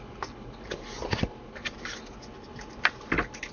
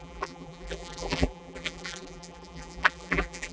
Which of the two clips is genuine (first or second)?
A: first